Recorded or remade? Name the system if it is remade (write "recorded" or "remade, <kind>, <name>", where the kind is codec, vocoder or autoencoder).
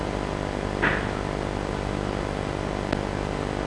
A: recorded